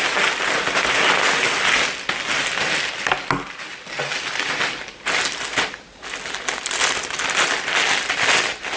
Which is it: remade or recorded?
recorded